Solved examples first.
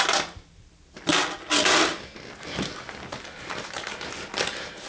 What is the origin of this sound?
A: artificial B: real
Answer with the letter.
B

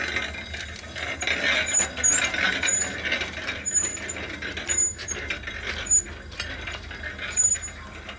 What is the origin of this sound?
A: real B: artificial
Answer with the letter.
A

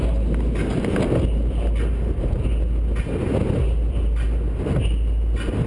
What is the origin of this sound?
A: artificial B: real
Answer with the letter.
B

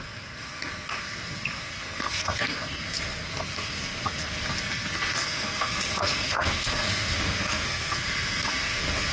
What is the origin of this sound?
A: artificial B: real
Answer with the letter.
A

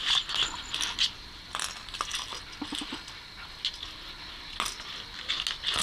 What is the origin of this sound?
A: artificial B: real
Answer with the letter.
B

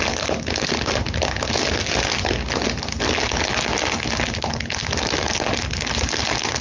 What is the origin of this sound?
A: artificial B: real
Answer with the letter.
B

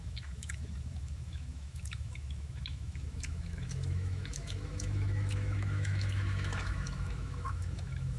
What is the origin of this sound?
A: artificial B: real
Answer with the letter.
A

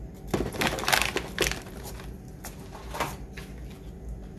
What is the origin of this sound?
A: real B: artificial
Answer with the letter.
A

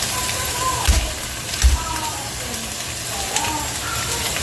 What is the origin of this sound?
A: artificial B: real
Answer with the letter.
B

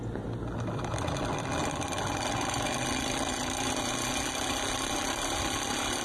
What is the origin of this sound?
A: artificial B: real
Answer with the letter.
B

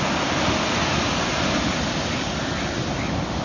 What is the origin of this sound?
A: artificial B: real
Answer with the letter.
B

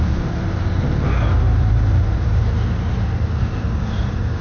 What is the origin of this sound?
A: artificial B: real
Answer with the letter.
A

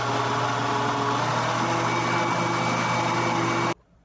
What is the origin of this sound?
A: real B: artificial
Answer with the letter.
A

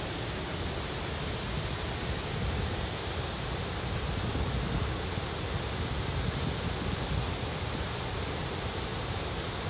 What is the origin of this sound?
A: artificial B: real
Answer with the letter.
B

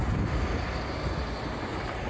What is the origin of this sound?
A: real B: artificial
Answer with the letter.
A